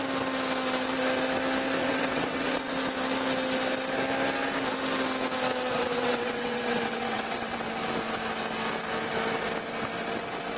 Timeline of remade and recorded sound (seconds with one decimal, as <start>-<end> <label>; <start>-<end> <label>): 0.0-1.8 recorded; 1.8-2.7 remade; 2.7-5.7 recorded; 5.7-7.7 remade; 7.7-10.6 recorded